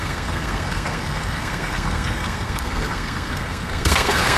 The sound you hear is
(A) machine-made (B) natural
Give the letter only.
A